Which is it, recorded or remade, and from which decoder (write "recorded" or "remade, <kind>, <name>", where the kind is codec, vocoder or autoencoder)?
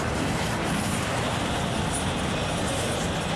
recorded